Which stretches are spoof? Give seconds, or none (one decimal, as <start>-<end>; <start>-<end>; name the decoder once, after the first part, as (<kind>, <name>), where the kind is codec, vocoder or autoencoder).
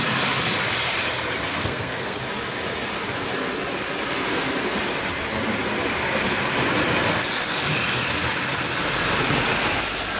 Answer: 1.5-2.2 (codec, SNAC)